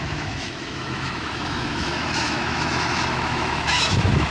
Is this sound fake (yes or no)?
yes